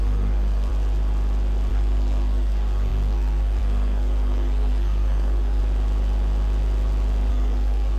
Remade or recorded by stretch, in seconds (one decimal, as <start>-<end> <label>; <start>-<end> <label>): 0.0-0.7 remade; 0.7-1.7 recorded; 1.7-5.6 remade; 5.6-7.3 recorded; 7.3-8.0 remade